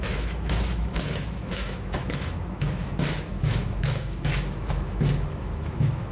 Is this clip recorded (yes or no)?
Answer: no